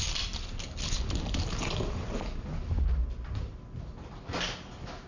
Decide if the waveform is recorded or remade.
recorded